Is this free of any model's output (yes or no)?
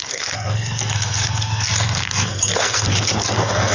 no